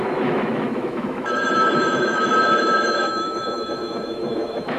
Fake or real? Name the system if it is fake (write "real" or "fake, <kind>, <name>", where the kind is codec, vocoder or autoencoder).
fake, autoencoder, DAC-VAE